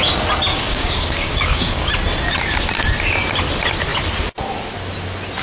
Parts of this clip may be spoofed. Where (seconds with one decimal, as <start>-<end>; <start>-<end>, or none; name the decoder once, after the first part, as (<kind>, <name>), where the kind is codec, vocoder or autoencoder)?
0.5-1.9 (codec, DAC)